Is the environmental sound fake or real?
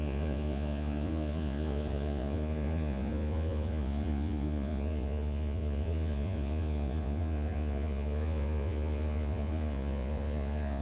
fake